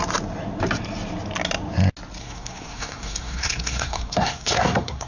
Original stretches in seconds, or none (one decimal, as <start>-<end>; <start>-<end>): 0.0-2.2